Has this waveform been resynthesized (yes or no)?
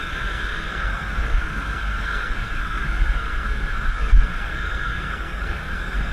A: yes